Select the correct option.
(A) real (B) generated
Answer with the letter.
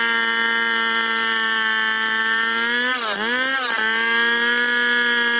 A